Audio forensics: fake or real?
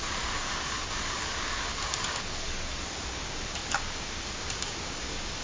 fake